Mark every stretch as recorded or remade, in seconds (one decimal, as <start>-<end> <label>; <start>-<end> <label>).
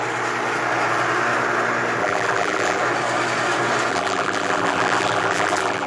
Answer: 0.0-2.0 recorded; 2.0-2.8 remade; 2.8-3.9 recorded; 3.9-5.9 remade